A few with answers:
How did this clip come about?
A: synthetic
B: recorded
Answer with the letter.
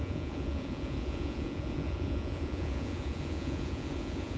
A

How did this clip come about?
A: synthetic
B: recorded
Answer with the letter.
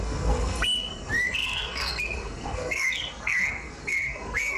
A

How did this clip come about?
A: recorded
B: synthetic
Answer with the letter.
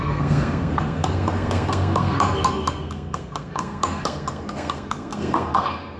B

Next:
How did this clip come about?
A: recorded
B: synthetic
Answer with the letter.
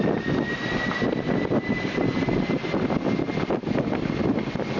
A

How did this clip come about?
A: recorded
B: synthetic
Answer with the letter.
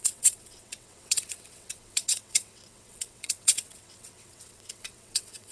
B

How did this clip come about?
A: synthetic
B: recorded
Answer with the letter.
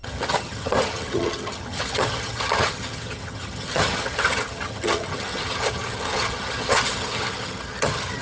A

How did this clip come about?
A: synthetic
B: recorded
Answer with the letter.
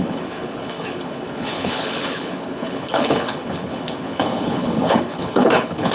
A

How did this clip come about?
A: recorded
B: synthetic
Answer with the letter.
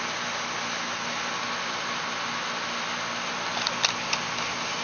A